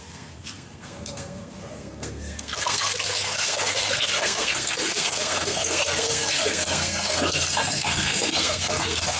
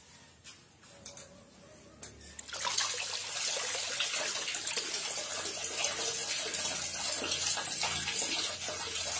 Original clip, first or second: second